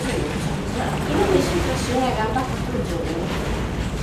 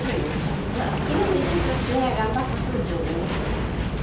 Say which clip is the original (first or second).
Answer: second